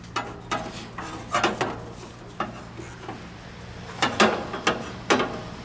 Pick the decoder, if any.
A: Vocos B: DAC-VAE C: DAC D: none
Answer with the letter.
D